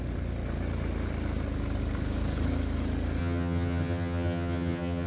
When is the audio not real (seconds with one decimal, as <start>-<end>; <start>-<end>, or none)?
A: 3.2-5.1